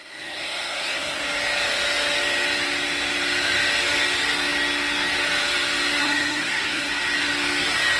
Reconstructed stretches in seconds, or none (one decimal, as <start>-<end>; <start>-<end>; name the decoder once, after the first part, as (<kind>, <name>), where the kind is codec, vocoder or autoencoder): 0.0-1.2 (codec, SNAC); 6.0-6.9